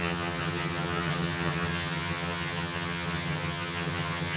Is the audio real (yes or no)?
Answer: no